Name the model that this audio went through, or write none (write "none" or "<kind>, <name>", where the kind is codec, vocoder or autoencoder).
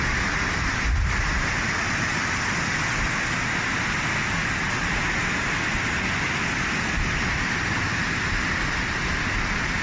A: none